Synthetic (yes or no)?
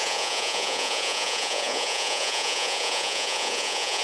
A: yes